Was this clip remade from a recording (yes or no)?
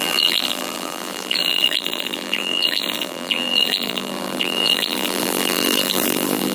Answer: yes